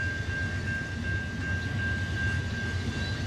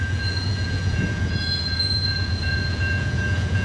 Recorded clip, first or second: first